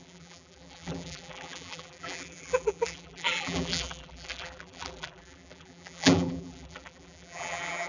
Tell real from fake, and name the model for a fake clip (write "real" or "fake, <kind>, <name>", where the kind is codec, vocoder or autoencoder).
fake, vocoder, BigVGAN v2